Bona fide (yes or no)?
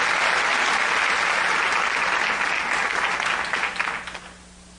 yes